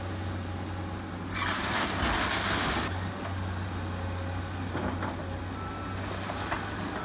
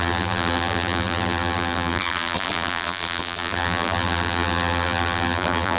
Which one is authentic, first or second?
first